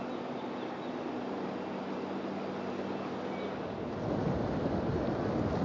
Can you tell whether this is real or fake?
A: real